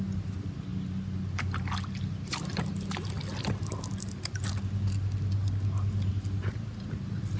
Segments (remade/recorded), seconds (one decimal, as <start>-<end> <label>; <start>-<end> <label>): 0.0-7.4 recorded